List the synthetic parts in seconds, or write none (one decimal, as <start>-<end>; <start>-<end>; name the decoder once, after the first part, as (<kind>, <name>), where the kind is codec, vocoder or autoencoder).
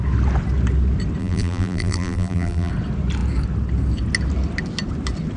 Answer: 1.2-2.7 (vocoder, BigVGAN v2)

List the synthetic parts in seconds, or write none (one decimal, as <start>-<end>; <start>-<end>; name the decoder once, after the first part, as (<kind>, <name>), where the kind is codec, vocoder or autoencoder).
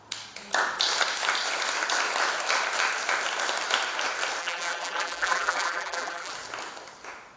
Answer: 4.4-6.3 (vocoder, BigVGAN v2)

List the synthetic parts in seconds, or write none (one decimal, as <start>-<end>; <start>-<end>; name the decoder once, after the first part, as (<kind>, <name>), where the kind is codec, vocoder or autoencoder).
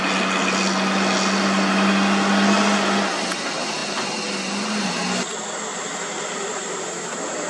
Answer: 5.7-7.5 (vocoder, BigVGAN v2)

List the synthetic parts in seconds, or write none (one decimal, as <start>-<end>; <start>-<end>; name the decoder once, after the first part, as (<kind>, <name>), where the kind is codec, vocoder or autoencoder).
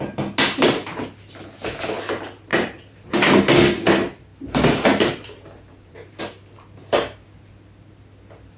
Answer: 2.5-3.4 (vocoder, BigVGAN v2); 4.3-6.2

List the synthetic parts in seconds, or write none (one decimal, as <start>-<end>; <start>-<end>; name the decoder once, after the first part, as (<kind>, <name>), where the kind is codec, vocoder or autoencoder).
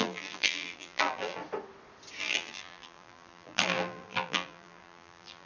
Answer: 0.0-1.4 (vocoder, BigVGAN v2); 2.2-5.5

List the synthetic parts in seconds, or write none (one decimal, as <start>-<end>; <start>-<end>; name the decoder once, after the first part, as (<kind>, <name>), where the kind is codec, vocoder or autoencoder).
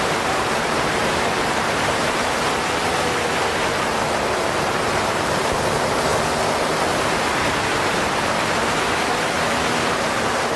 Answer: 0.0-6.1 (vocoder, BigVGAN v2); 6.9-10.6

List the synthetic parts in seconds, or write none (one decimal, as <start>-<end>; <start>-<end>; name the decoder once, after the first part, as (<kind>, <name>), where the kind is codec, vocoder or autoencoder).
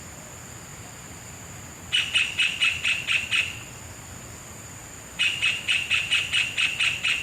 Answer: 0.7-1.6 (vocoder, BigVGAN v2); 4.8-6.1